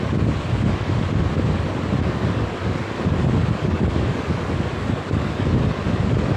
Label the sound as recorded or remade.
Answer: remade